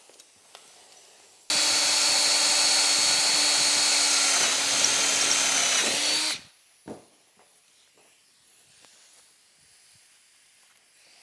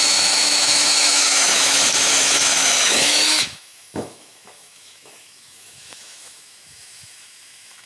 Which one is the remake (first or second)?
second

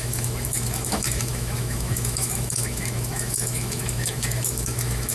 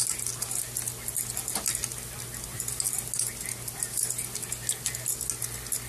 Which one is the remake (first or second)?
first